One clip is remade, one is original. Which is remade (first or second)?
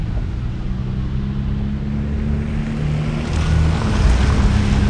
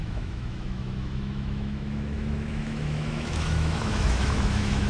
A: second